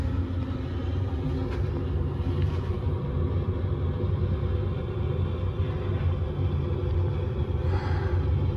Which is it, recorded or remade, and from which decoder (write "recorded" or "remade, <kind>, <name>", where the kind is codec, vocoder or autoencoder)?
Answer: recorded